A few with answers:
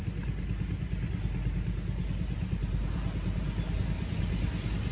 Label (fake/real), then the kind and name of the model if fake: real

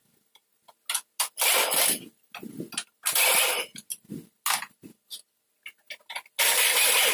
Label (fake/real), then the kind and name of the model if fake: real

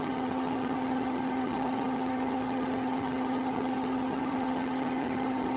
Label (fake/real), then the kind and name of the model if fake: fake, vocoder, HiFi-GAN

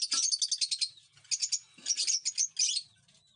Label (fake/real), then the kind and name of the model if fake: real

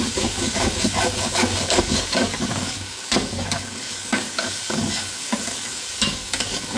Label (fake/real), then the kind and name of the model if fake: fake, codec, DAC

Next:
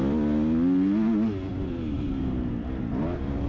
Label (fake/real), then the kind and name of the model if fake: real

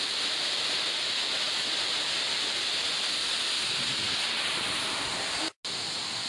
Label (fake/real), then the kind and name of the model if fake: real